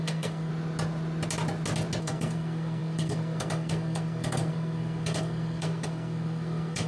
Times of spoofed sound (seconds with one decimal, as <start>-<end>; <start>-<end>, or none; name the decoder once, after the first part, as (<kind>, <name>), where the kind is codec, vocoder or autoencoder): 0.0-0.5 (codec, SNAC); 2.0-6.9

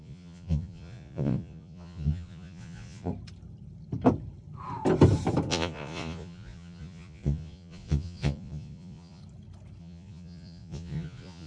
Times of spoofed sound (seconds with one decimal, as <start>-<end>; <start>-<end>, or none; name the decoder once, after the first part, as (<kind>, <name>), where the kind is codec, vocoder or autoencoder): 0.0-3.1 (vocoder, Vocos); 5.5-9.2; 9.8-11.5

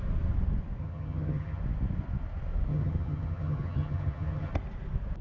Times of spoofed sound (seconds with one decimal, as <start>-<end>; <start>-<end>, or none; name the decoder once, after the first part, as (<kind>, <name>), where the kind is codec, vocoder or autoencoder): 0.8-1.6 (vocoder, HiFi-GAN); 2.7-4.5

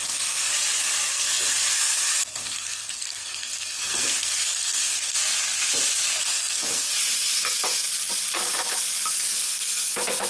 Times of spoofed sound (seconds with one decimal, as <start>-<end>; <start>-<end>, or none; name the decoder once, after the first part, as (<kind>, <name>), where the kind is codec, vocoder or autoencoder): 0.0-0.5 (codec, SNAC); 1.1-5.2; 6.2-6.9; 9.1-10.3

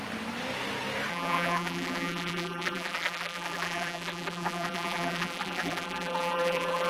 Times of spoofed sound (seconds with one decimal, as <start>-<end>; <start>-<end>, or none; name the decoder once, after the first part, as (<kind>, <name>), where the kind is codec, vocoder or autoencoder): 1.1-6.9 (vocoder, BigVGAN v2)

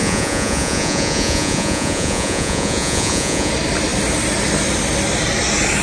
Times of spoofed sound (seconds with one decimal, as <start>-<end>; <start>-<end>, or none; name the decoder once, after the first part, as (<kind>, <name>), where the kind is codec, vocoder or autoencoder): 0.0-3.5 (vocoder, Vocos)

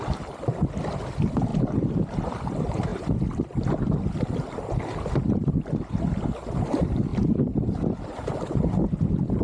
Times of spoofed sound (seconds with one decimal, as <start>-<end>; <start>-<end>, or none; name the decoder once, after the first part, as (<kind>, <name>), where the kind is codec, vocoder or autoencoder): none

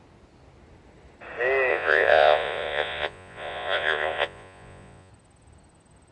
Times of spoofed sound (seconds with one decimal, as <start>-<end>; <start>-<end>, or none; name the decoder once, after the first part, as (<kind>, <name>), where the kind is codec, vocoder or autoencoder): 1.7-5.1 (vocoder, Vocos)